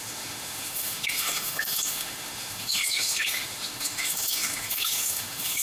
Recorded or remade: remade